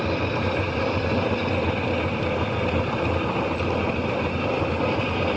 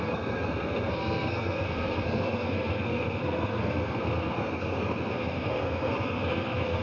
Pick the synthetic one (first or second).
second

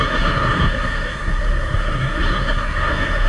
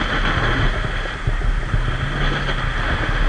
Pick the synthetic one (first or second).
first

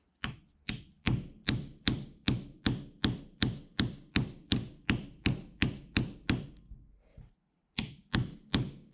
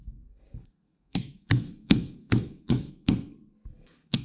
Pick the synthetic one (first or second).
second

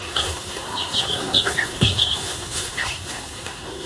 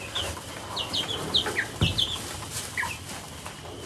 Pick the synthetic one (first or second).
first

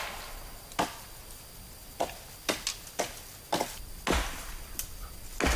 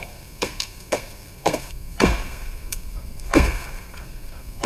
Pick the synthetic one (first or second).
second